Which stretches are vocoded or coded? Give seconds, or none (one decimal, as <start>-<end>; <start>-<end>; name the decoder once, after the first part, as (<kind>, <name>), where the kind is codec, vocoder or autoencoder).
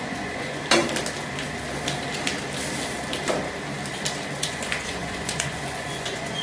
0.0-0.6 (vocoder, Vocos); 4.4-6.4